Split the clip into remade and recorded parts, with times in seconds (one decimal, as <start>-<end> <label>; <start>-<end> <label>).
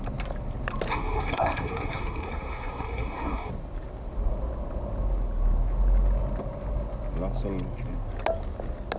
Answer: 0.0-0.9 recorded; 0.9-3.5 remade; 3.5-9.0 recorded